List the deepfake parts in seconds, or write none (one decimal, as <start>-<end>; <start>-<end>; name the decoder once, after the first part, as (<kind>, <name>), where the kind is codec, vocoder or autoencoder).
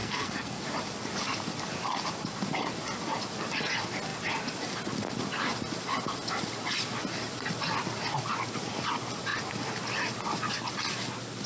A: 0.0-0.6 (codec, SNAC)